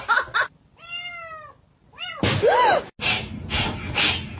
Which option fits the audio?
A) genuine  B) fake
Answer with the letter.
A